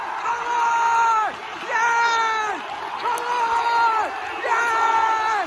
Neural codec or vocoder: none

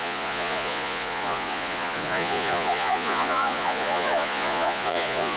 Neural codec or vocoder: vocoder, Vocos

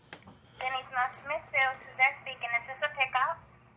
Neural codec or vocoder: none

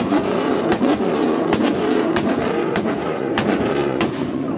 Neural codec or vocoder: vocoder, Vocos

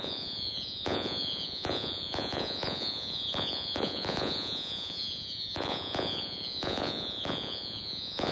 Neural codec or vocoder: vocoder, Vocos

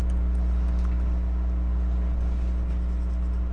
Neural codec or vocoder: none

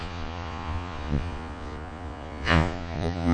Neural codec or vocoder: vocoder, Vocos